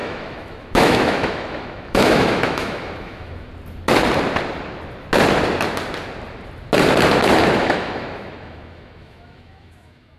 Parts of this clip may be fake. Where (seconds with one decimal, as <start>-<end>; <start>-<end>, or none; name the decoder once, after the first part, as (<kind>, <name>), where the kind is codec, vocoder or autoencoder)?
0.0-3.5 (autoencoder, DAC-VAE); 7.6-10.2